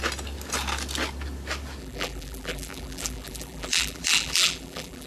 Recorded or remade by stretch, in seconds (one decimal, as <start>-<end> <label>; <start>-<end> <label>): 0.0-1.8 recorded; 1.8-5.1 remade